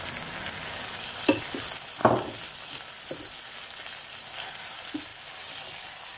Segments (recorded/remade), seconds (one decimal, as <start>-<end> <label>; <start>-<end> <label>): 0.0-6.2 recorded